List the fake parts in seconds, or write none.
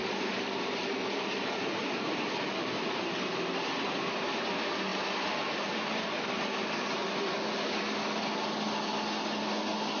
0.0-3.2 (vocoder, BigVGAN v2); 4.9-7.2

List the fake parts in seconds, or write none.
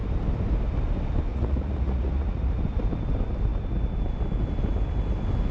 1.3-2.5 (vocoder, Vocos)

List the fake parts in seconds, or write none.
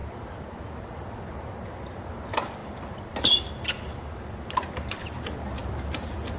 none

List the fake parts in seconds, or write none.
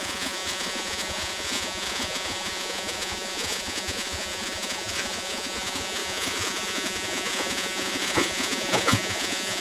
0.0-9.6 (vocoder, Vocos)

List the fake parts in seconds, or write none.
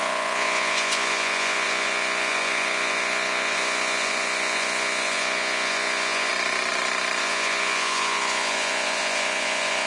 0.0-6.3 (vocoder, Vocos); 7.2-9.9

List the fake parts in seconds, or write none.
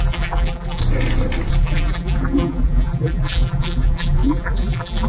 0.0-0.8 (vocoder, BigVGAN v2); 1.5-5.1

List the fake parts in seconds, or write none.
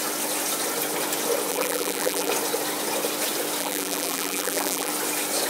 1.5-2.3 (vocoder, BigVGAN v2); 3.6-4.9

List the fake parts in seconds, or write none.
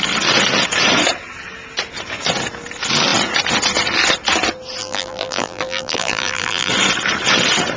4.8-6.7 (vocoder, BigVGAN v2)